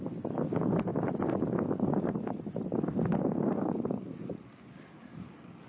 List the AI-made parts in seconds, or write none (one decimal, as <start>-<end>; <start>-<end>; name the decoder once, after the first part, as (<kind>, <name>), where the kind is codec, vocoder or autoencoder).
3.1-4.0 (codec, DAC)